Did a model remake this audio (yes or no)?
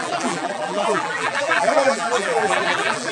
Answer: yes